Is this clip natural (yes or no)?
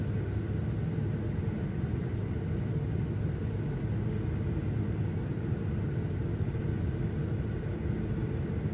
yes